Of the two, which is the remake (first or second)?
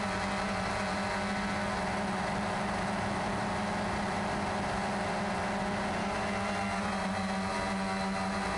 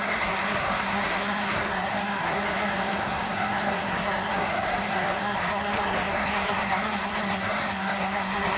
second